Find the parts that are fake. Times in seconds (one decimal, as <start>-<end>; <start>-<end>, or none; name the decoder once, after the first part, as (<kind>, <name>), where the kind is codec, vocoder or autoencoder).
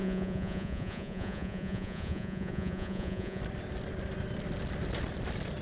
0.0-3.4 (vocoder, Vocos)